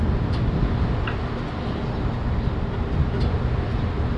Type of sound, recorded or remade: recorded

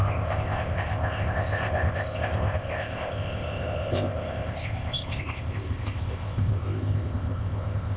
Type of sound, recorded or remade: remade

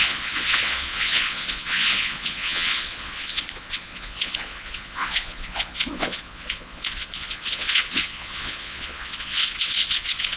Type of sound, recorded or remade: remade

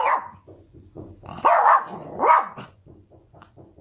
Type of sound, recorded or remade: remade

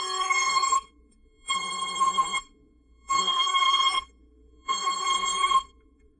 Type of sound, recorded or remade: remade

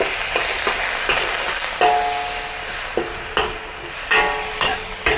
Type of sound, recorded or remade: recorded